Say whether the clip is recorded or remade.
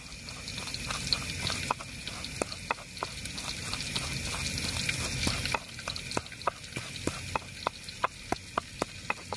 recorded